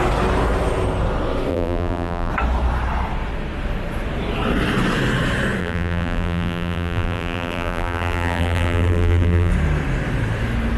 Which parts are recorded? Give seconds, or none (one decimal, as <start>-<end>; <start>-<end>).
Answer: 0.0-1.5; 2.3-5.6; 9.5-10.8

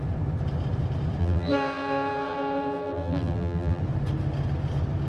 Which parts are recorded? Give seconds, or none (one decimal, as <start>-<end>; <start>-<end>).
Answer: 0.0-1.2; 3.8-5.1

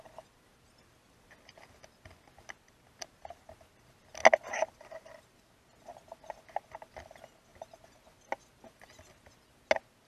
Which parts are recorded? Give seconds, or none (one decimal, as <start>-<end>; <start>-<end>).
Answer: 0.0-10.1

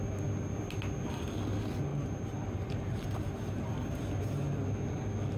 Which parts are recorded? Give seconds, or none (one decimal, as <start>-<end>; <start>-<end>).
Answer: 0.0-1.9; 4.2-5.4

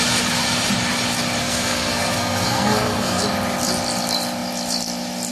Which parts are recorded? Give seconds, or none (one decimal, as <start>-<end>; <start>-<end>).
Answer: 0.0-1.4; 3.2-5.3

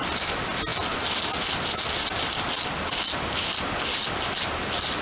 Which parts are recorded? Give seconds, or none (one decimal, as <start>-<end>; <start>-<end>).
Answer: 0.0-5.0